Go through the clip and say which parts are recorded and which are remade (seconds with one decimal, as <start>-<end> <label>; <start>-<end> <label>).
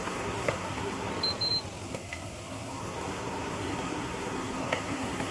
0.0-1.1 remade; 1.1-1.8 recorded; 1.8-5.3 remade